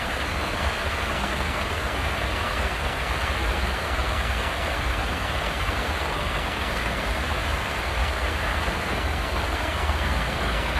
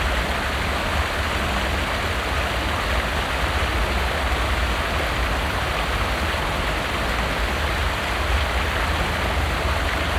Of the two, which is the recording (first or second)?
second